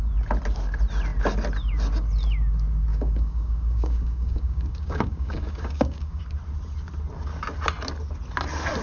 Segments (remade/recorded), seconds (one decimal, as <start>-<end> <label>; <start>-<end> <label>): 0.0-2.9 recorded; 2.9-6.2 remade; 6.2-8.8 recorded